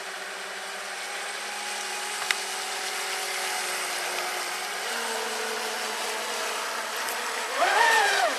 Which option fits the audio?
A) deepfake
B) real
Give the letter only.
B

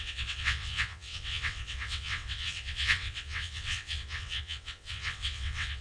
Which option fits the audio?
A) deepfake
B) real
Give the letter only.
A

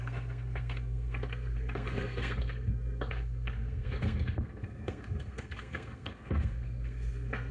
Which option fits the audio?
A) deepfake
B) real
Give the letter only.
A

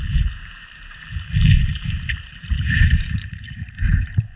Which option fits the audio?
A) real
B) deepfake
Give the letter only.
B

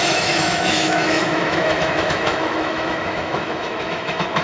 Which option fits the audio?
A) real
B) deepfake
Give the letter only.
B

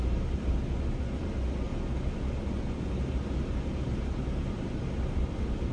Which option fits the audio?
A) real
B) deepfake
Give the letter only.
A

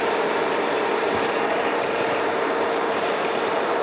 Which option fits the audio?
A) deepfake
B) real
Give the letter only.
A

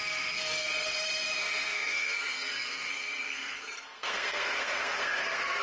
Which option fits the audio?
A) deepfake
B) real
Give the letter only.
A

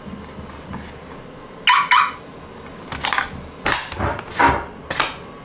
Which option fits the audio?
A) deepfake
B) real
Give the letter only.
B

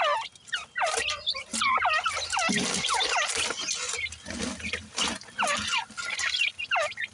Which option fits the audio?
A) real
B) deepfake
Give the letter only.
A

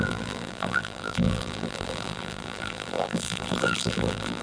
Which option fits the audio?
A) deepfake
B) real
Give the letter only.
A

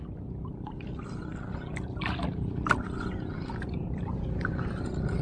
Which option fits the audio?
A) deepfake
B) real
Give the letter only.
B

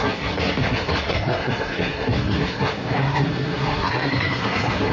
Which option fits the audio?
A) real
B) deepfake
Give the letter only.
B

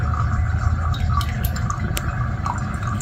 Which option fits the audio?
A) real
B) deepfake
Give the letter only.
A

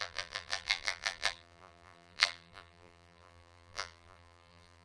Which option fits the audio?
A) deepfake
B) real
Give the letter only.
A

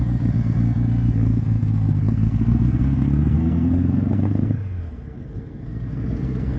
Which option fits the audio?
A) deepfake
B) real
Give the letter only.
A